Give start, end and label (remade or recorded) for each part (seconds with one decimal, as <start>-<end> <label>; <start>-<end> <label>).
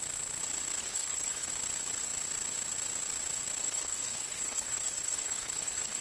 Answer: 0.0-0.8 recorded; 0.8-1.5 remade; 1.5-3.6 recorded; 3.6-6.0 remade